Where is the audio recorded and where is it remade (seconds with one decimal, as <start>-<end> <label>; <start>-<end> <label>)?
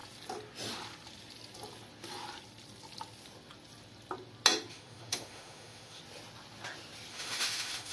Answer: 0.0-4.7 recorded; 4.7-6.0 remade; 6.0-7.1 recorded; 7.1-7.9 remade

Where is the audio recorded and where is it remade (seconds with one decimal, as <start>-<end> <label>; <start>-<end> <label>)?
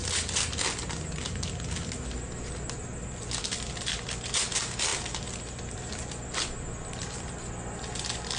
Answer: 0.0-4.9 recorded; 4.9-8.4 remade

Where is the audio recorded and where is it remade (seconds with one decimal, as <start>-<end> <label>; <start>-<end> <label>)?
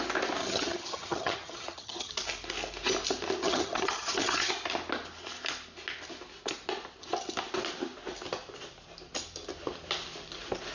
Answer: 0.0-0.4 recorded; 0.4-2.1 remade; 2.1-3.4 recorded; 3.4-4.5 remade; 4.5-10.7 recorded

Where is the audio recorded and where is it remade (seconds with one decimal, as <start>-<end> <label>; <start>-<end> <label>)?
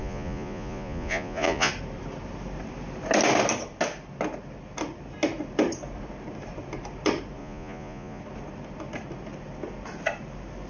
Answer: 0.0-1.7 remade; 1.7-7.4 recorded; 7.4-8.2 remade; 8.2-10.7 recorded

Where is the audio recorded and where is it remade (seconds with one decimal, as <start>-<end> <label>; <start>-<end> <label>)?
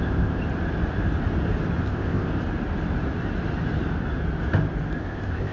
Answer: 0.0-0.4 remade; 0.4-1.8 recorded; 1.8-2.3 remade; 2.3-5.0 recorded; 5.0-5.5 remade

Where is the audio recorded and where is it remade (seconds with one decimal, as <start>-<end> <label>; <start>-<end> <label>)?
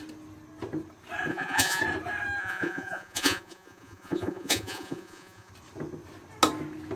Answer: 0.0-1.3 recorded; 1.3-1.8 remade; 1.8-2.4 recorded; 2.4-5.5 remade; 5.5-7.0 recorded